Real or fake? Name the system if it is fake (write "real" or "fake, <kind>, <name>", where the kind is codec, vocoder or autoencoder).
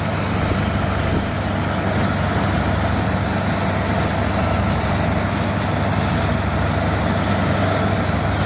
real